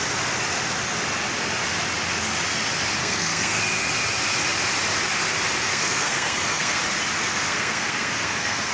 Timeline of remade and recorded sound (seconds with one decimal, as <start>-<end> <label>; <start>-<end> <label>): 0.0-3.0 recorded; 3.0-3.6 remade; 3.6-5.7 recorded; 5.7-6.8 remade; 6.8-7.2 recorded; 7.2-8.7 remade